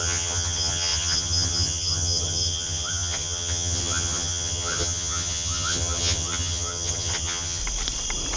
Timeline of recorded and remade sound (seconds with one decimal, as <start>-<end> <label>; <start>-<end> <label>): 0.0-7.6 remade; 7.6-8.4 recorded